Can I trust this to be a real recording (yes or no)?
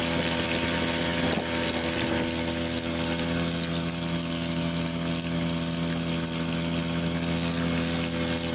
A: yes